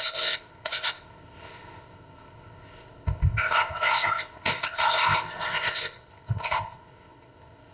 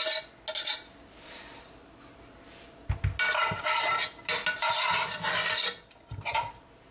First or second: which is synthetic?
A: first